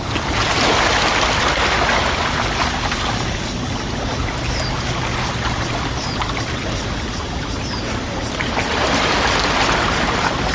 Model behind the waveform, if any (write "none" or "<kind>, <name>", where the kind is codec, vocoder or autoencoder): none